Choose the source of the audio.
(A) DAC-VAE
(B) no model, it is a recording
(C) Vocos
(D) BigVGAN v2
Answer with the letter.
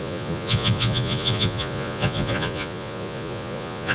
C